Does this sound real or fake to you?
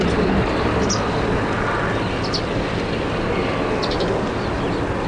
real